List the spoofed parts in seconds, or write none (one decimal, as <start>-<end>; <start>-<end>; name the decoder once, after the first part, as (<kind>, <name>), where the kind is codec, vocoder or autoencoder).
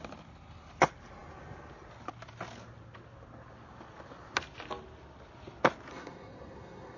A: 5.9-7.0 (codec, SNAC)